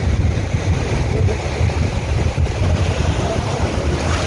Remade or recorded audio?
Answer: remade